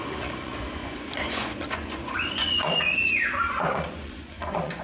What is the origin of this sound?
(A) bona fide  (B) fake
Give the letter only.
B